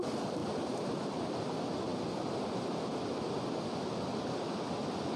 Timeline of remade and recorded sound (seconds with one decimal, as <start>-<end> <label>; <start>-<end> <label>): 0.0-5.2 recorded